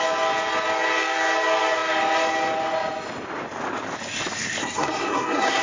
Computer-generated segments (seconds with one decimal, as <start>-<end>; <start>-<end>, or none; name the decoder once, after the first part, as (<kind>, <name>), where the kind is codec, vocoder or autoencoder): 4.6-5.6 (codec, SNAC)